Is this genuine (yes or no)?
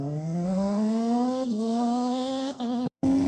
no